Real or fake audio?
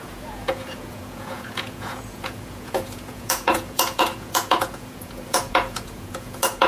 fake